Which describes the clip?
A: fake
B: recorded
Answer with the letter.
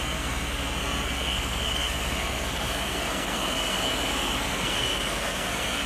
A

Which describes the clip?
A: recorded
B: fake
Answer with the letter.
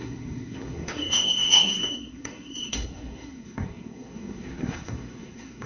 B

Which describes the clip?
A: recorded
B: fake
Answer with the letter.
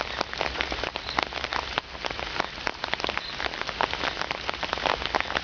A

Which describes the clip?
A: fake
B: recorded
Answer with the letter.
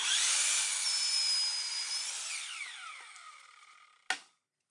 B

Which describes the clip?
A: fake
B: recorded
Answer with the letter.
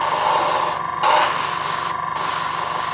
B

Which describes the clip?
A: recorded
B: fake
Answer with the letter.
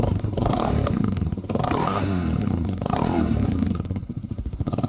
B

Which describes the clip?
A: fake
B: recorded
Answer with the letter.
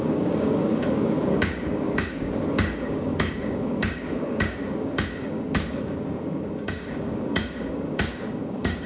A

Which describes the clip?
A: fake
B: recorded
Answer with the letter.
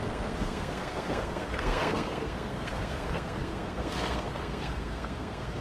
A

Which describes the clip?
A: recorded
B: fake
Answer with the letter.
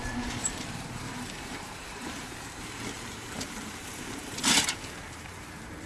B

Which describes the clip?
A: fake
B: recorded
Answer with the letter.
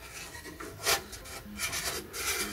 B